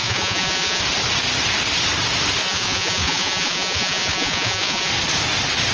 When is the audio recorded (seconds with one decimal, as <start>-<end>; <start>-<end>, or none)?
0.8-2.4; 4.9-5.7